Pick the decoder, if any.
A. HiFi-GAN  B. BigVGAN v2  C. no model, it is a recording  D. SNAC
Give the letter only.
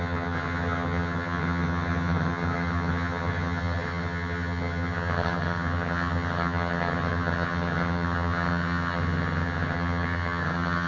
A